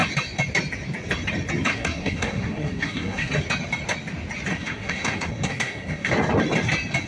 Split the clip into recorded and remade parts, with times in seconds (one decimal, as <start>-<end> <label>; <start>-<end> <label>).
0.0-1.7 recorded; 1.7-3.3 remade; 3.3-4.5 recorded; 4.5-6.1 remade; 6.1-7.1 recorded